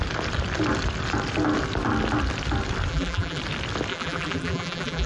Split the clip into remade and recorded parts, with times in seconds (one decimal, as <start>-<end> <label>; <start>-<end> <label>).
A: 0.0-2.9 recorded; 2.9-3.4 remade; 3.4-3.9 recorded; 3.9-5.1 remade